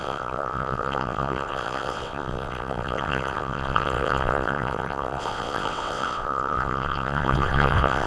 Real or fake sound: fake